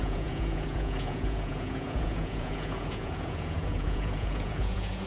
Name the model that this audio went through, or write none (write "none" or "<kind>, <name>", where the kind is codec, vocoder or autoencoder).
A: vocoder, Vocos